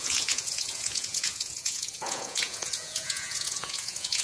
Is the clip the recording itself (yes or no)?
no